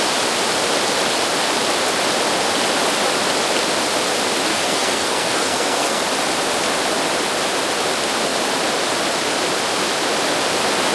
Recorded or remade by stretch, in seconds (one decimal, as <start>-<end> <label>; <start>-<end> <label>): 0.0-4.5 recorded; 4.5-6.0 remade; 6.0-10.9 recorded